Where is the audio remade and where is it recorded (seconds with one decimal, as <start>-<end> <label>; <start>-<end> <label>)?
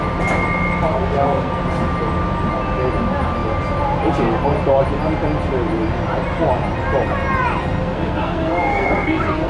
0.0-0.9 recorded; 0.9-1.6 remade; 1.6-7.6 recorded; 7.6-9.5 remade